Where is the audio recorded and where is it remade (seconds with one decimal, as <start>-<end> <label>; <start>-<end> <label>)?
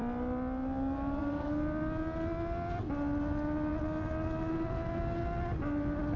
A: 0.0-6.2 recorded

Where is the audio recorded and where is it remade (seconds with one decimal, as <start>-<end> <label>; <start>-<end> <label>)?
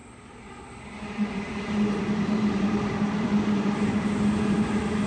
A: 0.0-1.3 recorded; 1.3-5.1 remade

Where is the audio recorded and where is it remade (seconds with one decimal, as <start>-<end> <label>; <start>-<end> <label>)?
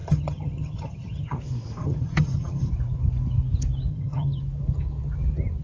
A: 0.0-1.4 remade; 1.4-1.8 recorded; 1.8-2.7 remade; 2.7-3.9 recorded; 3.9-4.4 remade; 4.4-5.6 recorded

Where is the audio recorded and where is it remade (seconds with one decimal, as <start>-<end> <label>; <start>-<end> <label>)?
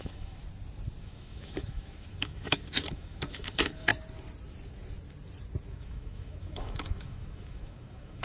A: 0.0-0.4 remade; 0.4-1.0 recorded; 1.0-3.9 remade; 3.9-5.7 recorded; 5.7-8.2 remade